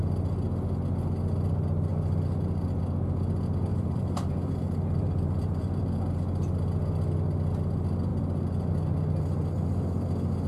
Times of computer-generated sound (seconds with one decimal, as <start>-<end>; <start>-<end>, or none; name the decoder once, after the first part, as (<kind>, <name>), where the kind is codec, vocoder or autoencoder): 3.7-5.8 (vocoder, BigVGAN v2)